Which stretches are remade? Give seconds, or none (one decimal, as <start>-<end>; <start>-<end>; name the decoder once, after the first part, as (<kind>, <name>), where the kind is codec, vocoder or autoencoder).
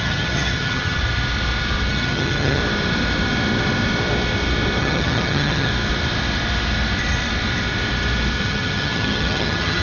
0.0-1.0 (vocoder, HiFi-GAN); 1.9-2.6; 4.8-5.7; 8.4-9.8